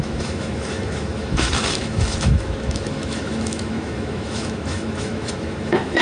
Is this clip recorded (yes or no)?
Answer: no